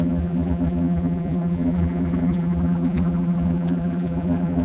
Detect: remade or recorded remade